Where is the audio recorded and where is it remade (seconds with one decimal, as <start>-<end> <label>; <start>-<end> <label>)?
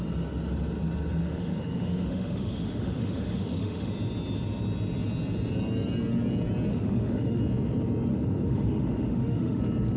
0.0-1.2 recorded; 1.2-3.9 remade; 3.9-6.7 recorded; 6.7-7.4 remade; 7.4-8.1 recorded; 8.1-9.6 remade; 9.6-10.0 recorded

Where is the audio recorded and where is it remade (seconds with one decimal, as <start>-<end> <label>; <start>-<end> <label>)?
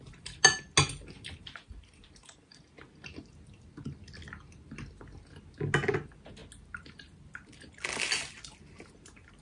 0.0-9.4 recorded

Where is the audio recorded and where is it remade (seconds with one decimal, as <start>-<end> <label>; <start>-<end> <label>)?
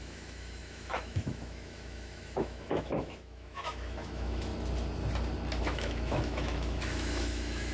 0.0-4.5 remade; 4.5-5.6 recorded; 5.6-7.7 remade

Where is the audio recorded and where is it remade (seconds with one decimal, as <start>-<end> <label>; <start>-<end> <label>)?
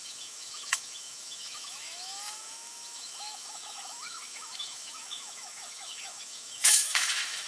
0.0-7.5 remade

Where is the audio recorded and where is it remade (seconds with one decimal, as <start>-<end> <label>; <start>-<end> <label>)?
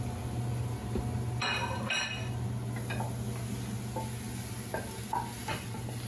0.0-6.1 recorded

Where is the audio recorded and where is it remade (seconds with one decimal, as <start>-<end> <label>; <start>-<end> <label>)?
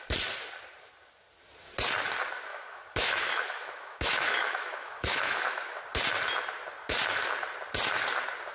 0.0-2.5 recorded; 2.5-5.8 remade; 5.8-8.5 recorded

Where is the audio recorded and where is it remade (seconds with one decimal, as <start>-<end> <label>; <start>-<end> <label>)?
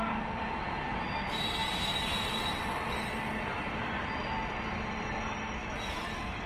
0.0-5.6 recorded; 5.6-6.5 remade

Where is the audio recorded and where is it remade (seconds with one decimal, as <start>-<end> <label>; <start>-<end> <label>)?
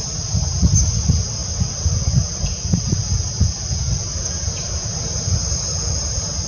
0.0-6.5 recorded